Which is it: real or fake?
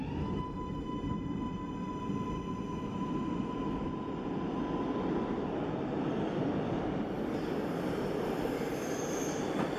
real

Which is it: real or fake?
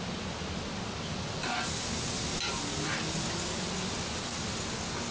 real